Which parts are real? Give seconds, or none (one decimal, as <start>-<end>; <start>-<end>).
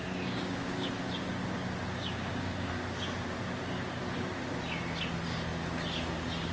0.9-2.0; 2.7-6.5